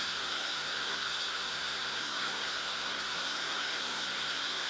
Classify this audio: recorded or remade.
remade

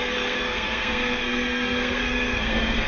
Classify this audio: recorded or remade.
remade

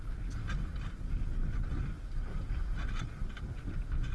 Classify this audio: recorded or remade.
recorded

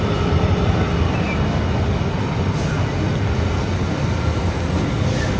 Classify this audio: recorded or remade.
recorded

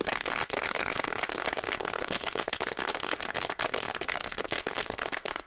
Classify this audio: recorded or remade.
remade